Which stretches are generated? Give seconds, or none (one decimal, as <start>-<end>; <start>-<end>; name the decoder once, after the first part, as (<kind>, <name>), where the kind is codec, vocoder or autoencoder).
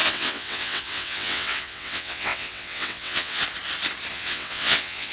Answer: 0.0-3.4 (vocoder, WaveNeXt); 4.1-5.1